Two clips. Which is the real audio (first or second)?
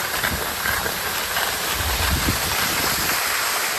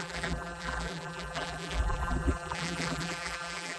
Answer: first